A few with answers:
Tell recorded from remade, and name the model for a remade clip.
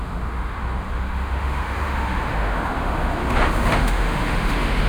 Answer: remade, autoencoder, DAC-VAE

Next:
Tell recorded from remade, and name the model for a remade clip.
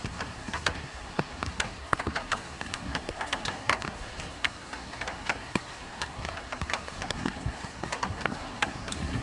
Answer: remade, codec, SNAC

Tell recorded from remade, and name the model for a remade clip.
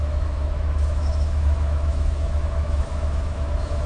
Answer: remade, autoencoder, DAC-VAE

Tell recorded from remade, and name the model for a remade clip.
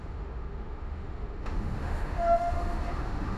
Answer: remade, autoencoder, DAC-VAE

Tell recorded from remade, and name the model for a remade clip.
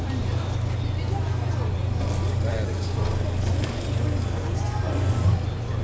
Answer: recorded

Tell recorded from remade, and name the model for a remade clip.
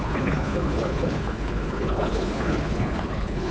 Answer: remade, codec, HILCodec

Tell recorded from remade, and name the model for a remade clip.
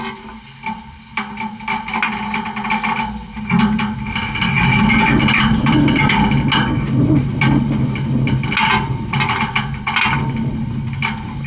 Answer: recorded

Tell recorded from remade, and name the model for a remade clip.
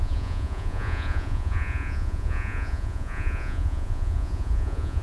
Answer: remade, vocoder, Vocos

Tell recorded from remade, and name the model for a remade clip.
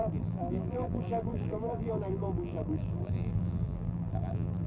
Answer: remade, vocoder, BigVGAN v2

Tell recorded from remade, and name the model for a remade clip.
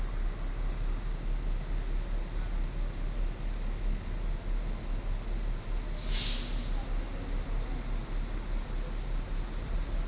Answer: recorded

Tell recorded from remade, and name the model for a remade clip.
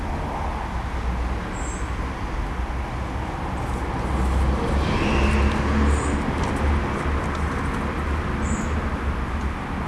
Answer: recorded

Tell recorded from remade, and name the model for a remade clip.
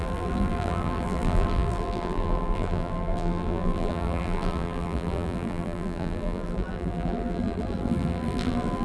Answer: remade, vocoder, BigVGAN v2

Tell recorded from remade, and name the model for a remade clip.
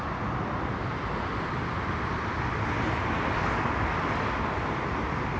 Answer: recorded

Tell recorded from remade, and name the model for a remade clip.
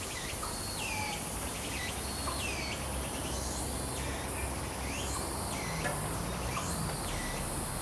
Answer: recorded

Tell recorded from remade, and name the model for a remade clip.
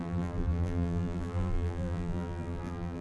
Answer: remade, vocoder, BigVGAN v2